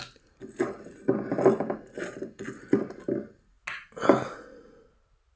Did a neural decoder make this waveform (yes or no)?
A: no